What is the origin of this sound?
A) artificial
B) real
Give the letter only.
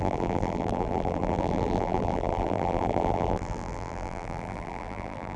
A